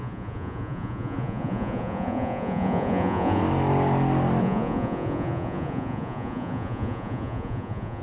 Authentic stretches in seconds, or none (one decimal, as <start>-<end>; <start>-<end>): 3.4-4.4